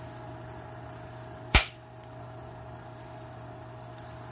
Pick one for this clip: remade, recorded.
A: remade